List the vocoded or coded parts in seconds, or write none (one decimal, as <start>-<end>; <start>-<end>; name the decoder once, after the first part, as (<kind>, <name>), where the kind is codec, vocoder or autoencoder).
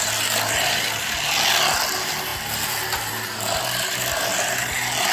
none